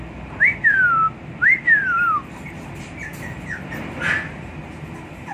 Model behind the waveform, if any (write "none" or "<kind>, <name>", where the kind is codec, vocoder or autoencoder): none